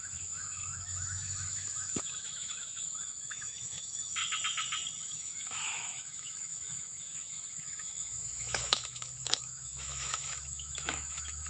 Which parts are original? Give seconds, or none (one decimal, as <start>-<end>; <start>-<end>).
4.2-5.0